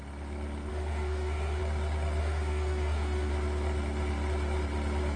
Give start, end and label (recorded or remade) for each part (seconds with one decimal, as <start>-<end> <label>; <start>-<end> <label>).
0.0-0.7 recorded; 0.7-1.6 remade; 1.6-2.2 recorded; 2.2-3.3 remade; 3.3-5.2 recorded